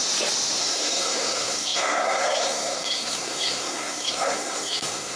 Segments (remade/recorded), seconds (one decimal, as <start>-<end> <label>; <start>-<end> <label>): 0.0-0.6 recorded; 0.6-5.2 remade